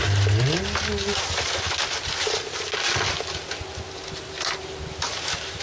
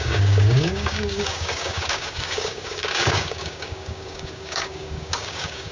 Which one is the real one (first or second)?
first